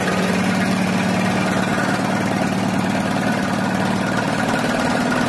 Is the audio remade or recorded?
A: recorded